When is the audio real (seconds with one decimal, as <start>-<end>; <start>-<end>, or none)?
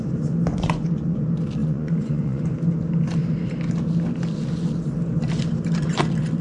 0.0-0.5; 1.2-1.6; 2.5-6.4